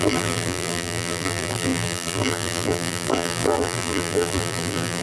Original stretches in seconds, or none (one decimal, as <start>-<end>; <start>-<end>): none